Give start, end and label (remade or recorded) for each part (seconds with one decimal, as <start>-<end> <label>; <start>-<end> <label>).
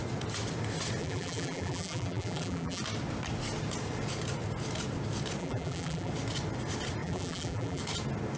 0.0-1.0 recorded; 1.0-2.8 remade; 2.8-5.4 recorded; 5.4-6.1 remade; 6.1-7.0 recorded; 7.0-7.8 remade; 7.8-8.4 recorded